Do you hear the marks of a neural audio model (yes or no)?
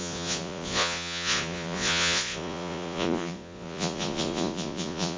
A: yes